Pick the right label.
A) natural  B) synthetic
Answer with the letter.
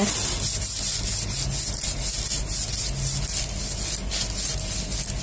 A